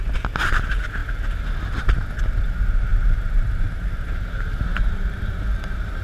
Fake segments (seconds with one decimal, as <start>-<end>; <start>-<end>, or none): 2.9-4.1; 4.7-6.0